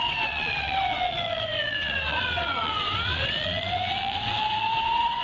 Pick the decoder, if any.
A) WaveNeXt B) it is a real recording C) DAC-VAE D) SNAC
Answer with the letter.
A